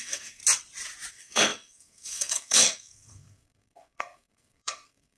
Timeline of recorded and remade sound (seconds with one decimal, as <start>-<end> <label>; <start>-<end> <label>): 0.0-0.4 remade; 0.4-1.1 recorded; 1.1-5.2 remade